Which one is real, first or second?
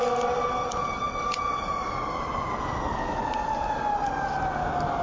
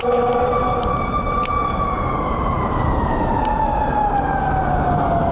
first